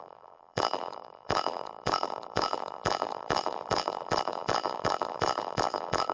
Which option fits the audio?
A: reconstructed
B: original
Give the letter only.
A